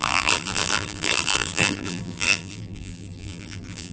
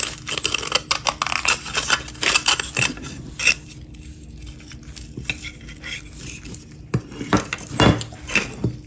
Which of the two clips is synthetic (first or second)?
first